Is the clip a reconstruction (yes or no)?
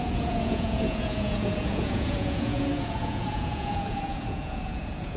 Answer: yes